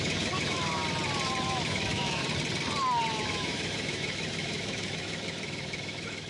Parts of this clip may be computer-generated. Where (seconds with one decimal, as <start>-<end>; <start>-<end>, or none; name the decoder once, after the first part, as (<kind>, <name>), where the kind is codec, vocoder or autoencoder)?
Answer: 0.0-0.8 (autoencoder, DAC-VAE); 1.4-2.2; 3.1-6.3

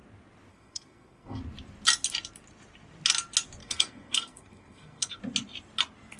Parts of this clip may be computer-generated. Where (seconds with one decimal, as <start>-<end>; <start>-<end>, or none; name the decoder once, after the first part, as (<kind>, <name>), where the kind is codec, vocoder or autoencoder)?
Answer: 0.5-1.4 (codec, SNAC); 3.6-5.2

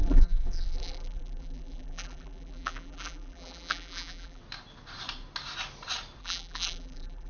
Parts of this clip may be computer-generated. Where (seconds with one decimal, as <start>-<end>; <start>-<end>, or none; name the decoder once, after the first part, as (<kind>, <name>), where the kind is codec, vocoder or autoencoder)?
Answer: 0.0-4.4 (vocoder, BigVGAN v2); 6.2-7.3

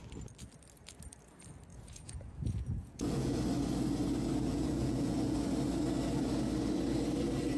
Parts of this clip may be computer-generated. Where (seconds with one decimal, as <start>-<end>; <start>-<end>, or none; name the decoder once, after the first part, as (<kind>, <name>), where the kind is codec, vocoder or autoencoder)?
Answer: 1.7-3.4 (vocoder, Vocos); 4.5-5.4